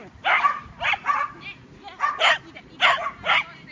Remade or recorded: recorded